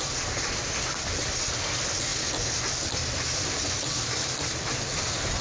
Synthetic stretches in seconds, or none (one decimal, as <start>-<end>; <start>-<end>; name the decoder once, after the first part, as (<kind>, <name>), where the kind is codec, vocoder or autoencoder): none